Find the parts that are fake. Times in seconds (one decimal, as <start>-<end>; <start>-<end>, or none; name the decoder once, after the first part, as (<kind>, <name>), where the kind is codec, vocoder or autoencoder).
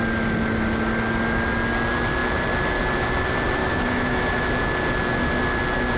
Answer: 3.6-4.5 (autoencoder, DAC-VAE)